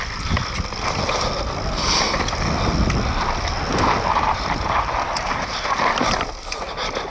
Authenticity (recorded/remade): recorded